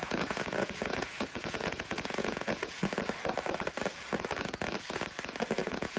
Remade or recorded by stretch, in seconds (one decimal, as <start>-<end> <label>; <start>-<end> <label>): 0.0-2.8 remade; 2.8-5.6 recorded; 5.6-6.0 remade